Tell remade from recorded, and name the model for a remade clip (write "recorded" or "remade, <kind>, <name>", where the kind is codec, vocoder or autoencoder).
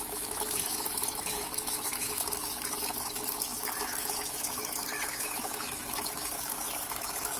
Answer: remade, autoencoder, DAC-VAE